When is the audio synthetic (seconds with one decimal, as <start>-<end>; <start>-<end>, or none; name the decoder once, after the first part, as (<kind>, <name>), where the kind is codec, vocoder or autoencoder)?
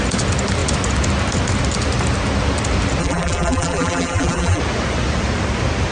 3.0-4.6 (vocoder, BigVGAN v2)